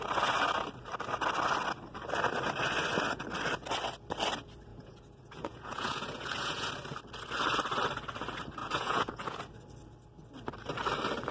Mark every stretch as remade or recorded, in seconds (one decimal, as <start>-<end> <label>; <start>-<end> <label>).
0.0-4.7 recorded; 4.7-6.7 remade; 6.7-8.6 recorded; 8.6-9.4 remade; 9.4-11.3 recorded